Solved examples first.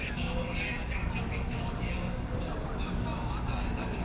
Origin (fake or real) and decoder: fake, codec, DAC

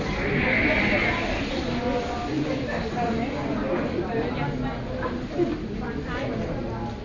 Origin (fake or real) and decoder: real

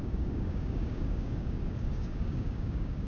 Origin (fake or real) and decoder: fake, codec, DAC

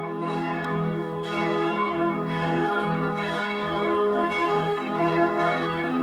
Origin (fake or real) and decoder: fake, codec, DAC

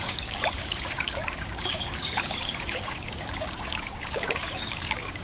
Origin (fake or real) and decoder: fake, codec, DAC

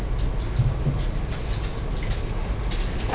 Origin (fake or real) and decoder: real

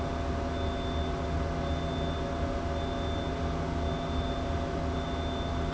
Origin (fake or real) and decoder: real